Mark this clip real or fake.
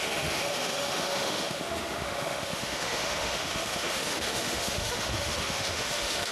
fake